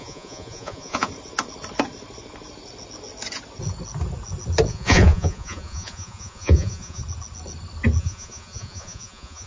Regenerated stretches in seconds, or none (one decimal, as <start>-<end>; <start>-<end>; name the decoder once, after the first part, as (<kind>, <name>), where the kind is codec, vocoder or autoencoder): 0.0-1.1 (vocoder, Vocos); 4.7-7.0; 8.0-9.5